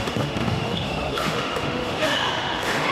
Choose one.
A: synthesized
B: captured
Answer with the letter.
A